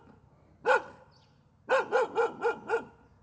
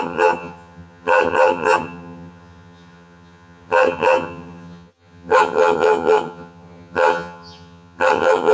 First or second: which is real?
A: first